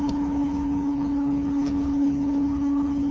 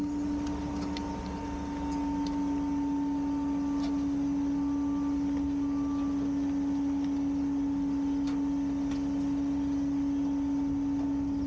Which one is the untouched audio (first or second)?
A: second